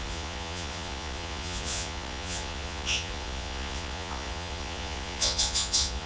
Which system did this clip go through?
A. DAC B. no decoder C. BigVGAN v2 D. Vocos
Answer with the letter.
D